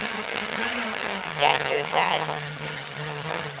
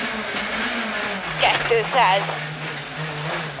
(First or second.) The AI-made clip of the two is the first